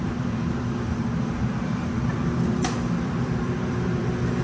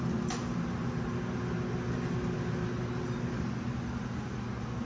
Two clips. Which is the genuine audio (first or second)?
second